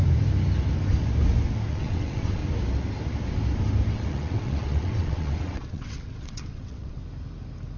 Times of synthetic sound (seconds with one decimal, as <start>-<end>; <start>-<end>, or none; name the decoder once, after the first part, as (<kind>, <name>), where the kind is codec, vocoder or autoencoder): 1.7-2.4 (vocoder, WaveNeXt); 3.9-7.0